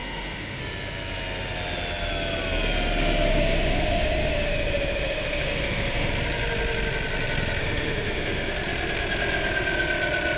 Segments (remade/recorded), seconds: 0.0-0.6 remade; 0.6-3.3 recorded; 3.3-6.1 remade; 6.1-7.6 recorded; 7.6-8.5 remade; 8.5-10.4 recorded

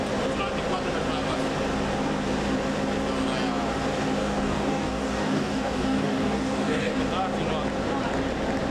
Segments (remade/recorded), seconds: 0.0-4.2 recorded; 4.2-7.0 remade; 7.0-8.7 recorded

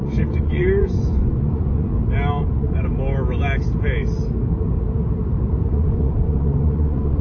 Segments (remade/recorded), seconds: 0.0-1.9 remade; 1.9-2.4 recorded; 2.4-2.9 remade; 2.9-5.7 recorded; 5.7-7.2 remade